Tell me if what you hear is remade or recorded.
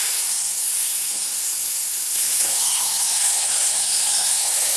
remade